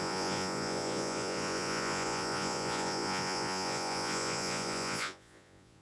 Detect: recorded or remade remade